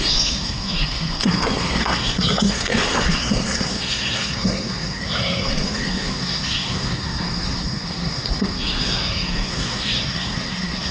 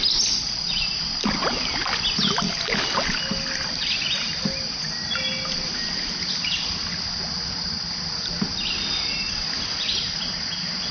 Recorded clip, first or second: second